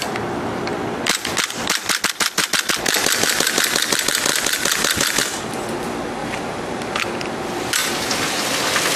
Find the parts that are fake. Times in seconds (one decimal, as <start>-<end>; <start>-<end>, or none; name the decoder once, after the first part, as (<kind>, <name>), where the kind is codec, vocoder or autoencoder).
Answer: 6.2-6.9 (vocoder, BigVGAN v2); 7.8-8.5